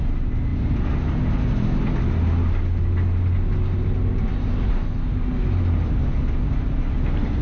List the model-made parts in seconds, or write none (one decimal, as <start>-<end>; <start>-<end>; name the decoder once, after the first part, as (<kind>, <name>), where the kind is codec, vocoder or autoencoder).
none